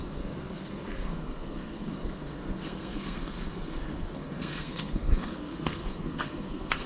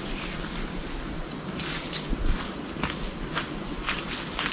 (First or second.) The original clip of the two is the second